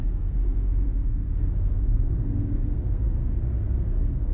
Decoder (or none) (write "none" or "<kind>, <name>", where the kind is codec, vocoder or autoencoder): codec, SNAC